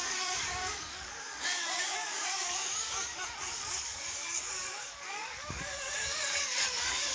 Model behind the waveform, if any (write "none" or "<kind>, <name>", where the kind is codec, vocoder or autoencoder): codec, DAC